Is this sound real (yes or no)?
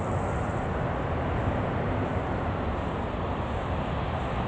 yes